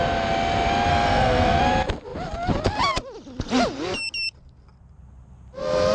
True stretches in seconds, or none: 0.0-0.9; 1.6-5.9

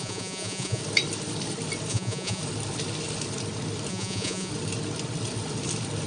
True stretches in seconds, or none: 0.8-1.9; 2.4-3.9; 4.5-6.1

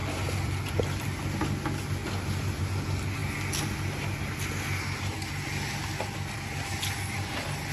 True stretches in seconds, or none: 0.0-7.7

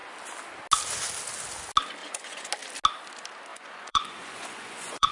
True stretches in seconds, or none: 0.0-2.0; 2.5-3.5

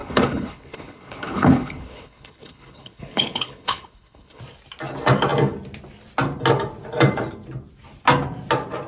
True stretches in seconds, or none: 4.4-8.9

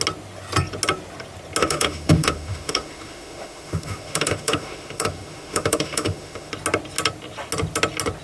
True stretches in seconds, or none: 0.0-1.6; 6.5-8.2